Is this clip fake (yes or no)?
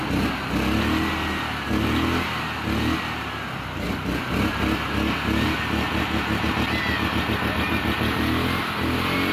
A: no